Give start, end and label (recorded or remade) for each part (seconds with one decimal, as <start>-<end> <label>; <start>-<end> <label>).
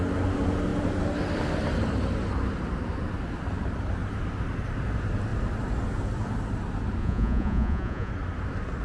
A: 0.0-7.0 recorded; 7.0-8.1 remade; 8.1-8.8 recorded